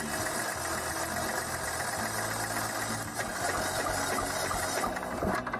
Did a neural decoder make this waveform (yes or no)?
no